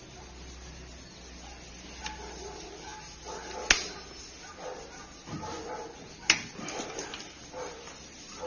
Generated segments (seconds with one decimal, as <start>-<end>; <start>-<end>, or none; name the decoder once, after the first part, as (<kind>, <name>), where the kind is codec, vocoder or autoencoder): none

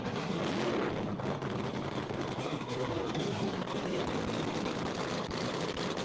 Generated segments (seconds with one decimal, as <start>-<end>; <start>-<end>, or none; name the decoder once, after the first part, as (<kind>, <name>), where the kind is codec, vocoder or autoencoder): 0.0-0.4 (codec, SNAC); 2.4-4.0

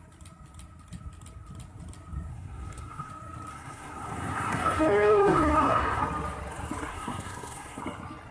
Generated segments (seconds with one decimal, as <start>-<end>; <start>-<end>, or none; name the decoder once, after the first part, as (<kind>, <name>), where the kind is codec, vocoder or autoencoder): 2.3-3.1 (codec, SNAC); 3.5-6.0; 6.9-7.8

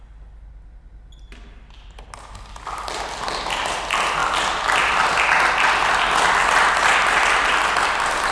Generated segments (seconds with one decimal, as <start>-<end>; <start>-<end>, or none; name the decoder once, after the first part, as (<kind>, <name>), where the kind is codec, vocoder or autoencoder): none